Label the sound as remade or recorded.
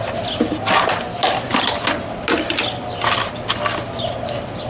recorded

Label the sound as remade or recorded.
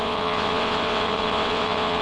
remade